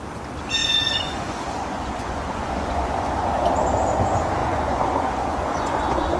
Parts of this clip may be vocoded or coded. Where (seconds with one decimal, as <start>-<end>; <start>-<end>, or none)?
0.6-3.1; 4.4-6.2